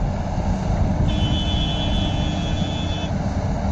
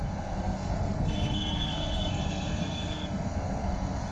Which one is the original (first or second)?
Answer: first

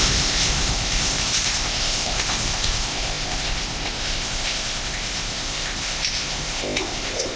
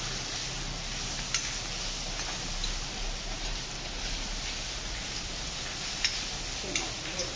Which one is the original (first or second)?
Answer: second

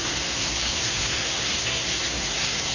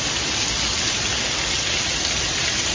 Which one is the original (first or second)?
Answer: second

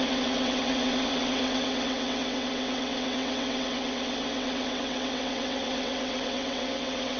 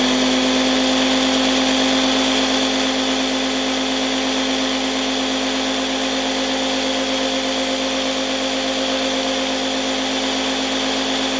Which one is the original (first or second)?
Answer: second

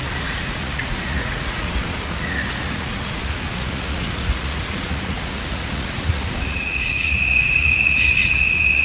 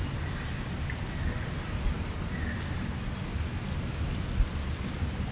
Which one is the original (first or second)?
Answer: second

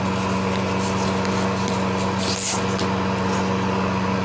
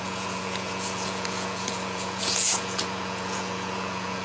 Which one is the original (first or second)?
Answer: first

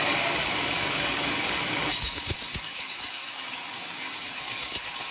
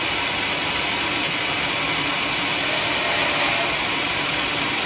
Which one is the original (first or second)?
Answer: second